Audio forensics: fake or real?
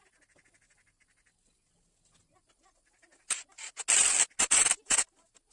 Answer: real